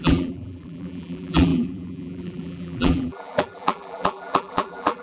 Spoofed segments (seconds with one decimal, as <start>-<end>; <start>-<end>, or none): 0.0-5.0